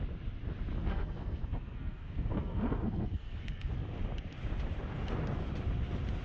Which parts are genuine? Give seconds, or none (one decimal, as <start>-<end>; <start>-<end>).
0.0-0.8; 3.7-6.2